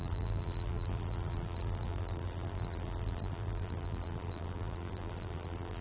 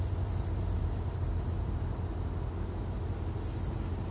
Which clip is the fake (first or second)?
first